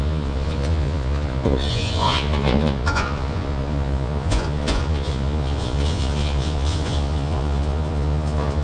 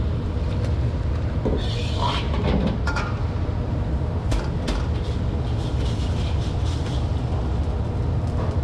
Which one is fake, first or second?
first